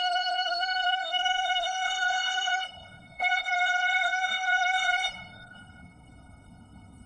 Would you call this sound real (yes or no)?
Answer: no